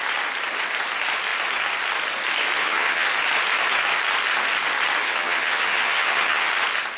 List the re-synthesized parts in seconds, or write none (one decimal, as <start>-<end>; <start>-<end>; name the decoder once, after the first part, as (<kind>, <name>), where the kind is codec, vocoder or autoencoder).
2.6-3.1 (vocoder, HiFi-GAN); 5.0-6.5